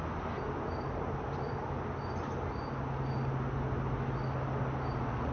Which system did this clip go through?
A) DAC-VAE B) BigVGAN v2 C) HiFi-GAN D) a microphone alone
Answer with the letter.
D